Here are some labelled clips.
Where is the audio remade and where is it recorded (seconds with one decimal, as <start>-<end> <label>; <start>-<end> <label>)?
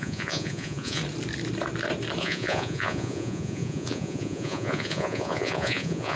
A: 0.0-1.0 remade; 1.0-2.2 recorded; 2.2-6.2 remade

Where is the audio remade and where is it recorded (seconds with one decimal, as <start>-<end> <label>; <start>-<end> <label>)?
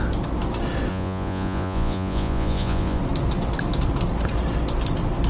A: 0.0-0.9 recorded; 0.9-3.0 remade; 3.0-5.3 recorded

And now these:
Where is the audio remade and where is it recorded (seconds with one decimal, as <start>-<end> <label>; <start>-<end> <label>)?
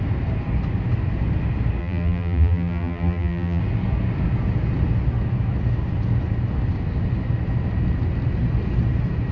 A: 0.0-1.8 recorded; 1.8-3.6 remade; 3.6-9.3 recorded